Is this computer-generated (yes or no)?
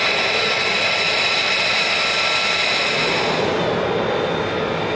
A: no